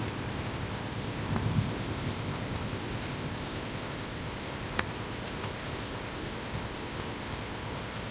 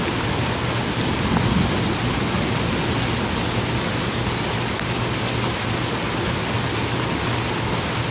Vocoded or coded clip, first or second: first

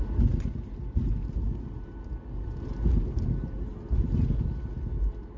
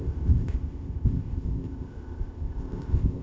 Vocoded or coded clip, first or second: second